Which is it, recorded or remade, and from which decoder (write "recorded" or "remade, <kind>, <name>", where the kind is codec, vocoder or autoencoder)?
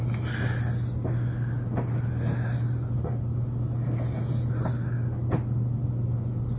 recorded